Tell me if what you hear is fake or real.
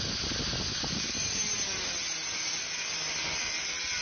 real